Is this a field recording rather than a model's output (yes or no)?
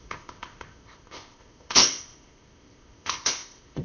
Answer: no